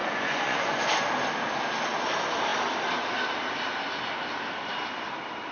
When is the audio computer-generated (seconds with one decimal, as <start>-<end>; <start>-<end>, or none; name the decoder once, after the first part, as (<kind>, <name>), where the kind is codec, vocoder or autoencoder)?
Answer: 0.0-0.8 (vocoder, Vocos)

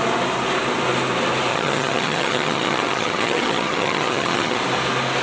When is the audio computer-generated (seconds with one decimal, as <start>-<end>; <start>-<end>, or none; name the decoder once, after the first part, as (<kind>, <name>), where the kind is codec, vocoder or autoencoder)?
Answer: 1.5-4.6 (vocoder, HiFi-GAN)